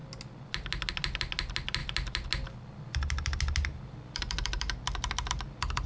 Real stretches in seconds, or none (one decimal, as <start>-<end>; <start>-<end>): 0.0-5.9